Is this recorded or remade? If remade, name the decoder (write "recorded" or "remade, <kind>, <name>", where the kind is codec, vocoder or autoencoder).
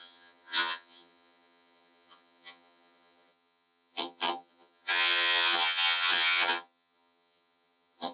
remade, vocoder, HiFi-GAN